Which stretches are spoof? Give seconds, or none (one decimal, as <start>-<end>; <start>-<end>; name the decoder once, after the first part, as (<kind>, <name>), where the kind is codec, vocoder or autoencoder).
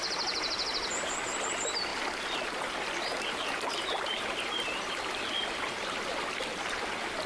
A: none